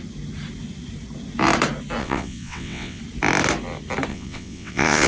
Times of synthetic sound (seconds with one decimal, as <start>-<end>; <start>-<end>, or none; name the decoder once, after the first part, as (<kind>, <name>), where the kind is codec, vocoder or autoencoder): 2.0-3.0 (vocoder, WaveNeXt); 4.1-5.1